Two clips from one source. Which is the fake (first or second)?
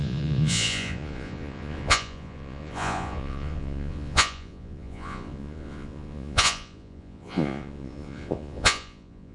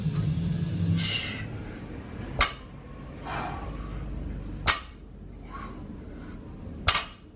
first